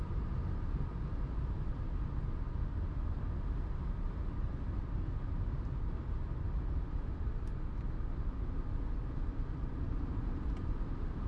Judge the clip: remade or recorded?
recorded